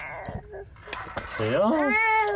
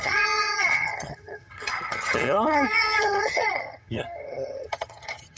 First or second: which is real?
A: first